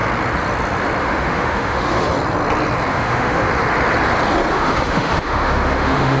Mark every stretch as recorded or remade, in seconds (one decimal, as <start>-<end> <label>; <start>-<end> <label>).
0.0-1.0 recorded; 1.0-2.1 remade; 2.1-2.9 recorded; 2.9-3.5 remade; 3.5-4.5 recorded; 4.5-6.2 remade